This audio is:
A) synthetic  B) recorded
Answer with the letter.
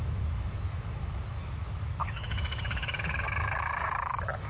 A